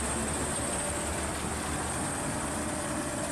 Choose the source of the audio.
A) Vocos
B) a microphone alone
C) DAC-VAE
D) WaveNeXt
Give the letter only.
B